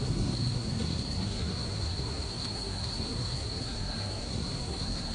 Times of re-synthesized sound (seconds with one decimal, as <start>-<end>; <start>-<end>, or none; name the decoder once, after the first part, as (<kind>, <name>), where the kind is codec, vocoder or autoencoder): 0.0-5.1 (codec, SNAC)